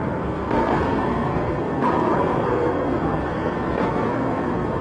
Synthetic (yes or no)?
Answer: yes